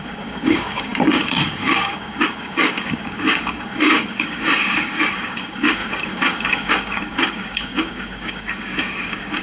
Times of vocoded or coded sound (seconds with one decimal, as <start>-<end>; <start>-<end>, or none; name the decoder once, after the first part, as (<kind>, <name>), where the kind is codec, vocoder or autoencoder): 0.0-9.4 (codec, DAC)